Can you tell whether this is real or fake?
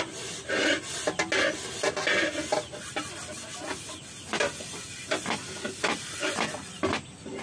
real